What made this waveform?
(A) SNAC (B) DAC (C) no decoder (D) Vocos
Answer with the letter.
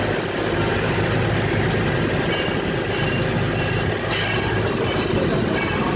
C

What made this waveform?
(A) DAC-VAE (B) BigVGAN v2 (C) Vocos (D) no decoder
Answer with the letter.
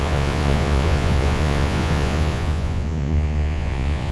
C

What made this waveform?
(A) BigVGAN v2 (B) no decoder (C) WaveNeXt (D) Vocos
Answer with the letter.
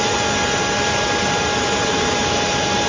B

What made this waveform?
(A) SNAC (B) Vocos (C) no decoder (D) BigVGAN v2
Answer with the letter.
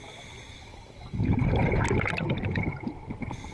C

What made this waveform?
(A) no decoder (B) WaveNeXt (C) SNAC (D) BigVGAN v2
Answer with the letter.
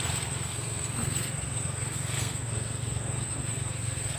C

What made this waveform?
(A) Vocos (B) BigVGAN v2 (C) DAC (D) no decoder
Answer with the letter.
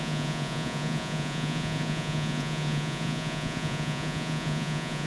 A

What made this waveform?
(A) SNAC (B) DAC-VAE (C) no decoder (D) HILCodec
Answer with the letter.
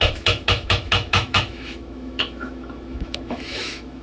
B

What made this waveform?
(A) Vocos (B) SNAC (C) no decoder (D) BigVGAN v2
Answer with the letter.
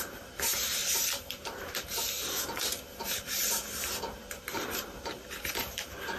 D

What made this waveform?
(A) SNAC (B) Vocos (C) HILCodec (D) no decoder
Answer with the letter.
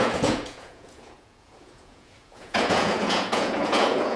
B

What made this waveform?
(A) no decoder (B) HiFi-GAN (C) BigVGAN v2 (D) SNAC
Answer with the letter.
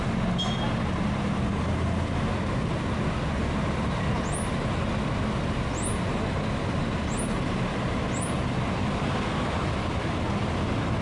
A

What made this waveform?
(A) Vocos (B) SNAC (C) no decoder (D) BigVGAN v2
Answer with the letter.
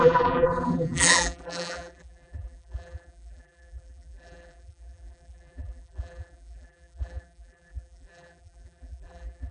D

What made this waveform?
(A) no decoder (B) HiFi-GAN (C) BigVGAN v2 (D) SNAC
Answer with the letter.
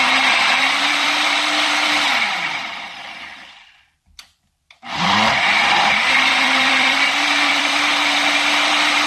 C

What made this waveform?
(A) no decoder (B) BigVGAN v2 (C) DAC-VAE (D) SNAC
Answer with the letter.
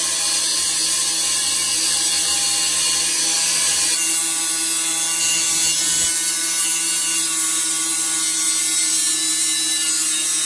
A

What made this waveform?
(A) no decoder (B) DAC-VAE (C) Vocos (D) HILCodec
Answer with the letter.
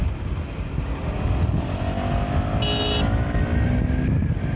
A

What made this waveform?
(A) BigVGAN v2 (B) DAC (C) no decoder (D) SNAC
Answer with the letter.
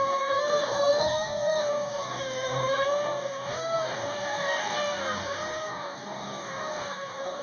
B